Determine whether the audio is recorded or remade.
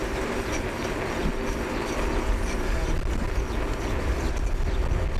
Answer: recorded